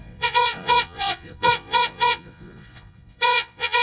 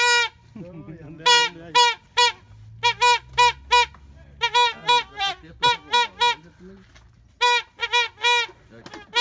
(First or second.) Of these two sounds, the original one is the second